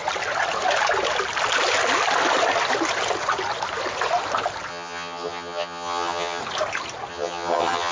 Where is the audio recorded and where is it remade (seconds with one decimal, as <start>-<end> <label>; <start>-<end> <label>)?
0.0-4.7 recorded; 4.7-6.4 remade; 6.4-7.1 recorded; 7.1-7.9 remade